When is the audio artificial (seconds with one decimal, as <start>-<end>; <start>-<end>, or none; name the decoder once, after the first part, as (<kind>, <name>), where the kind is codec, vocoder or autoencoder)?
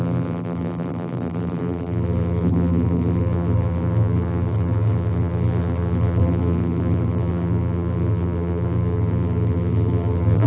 0.0-10.5 (vocoder, BigVGAN v2)